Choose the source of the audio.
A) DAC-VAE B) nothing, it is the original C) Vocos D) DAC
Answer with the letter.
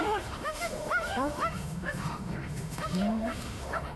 A